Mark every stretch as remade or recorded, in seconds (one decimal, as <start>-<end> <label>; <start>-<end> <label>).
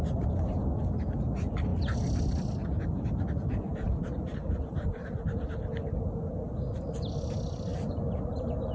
0.0-8.7 recorded